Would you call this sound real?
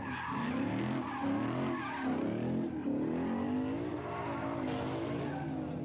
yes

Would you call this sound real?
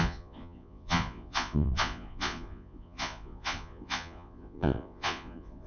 no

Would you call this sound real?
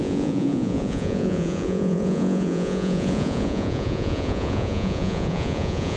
no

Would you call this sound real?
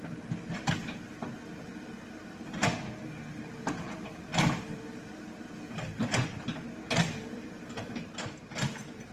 yes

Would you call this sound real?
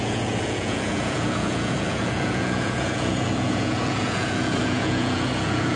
no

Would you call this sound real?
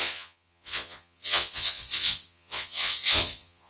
no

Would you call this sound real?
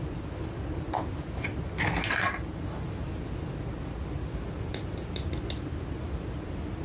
yes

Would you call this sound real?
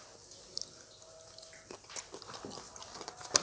yes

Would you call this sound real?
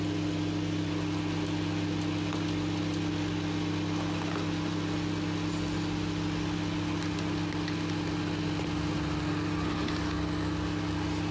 yes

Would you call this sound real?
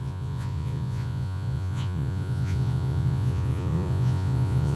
no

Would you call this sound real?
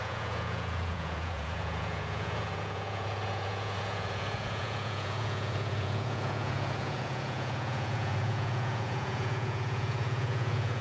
no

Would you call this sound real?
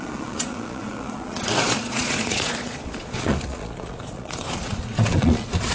no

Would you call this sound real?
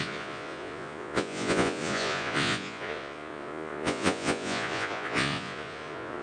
no